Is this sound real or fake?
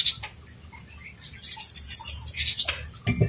real